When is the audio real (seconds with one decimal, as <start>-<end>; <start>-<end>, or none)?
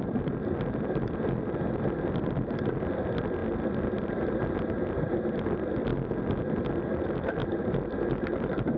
5.9-6.4; 7.4-8.0